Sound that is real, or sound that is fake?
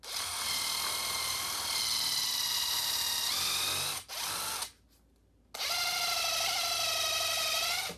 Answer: real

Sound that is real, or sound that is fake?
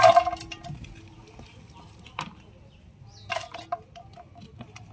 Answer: real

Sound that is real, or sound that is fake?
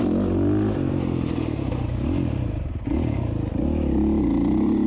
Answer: real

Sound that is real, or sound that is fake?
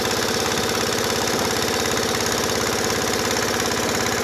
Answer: real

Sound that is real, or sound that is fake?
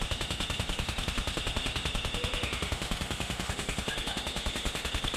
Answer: fake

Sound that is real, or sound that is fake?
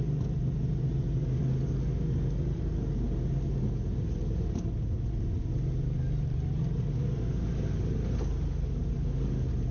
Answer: real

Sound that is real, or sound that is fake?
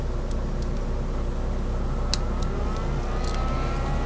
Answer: real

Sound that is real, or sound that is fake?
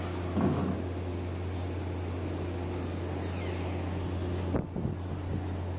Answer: real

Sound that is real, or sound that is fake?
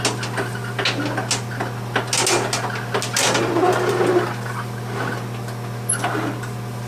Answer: real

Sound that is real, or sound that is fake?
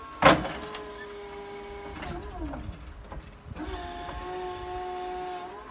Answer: real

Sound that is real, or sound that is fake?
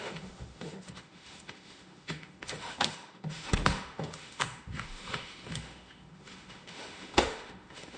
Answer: fake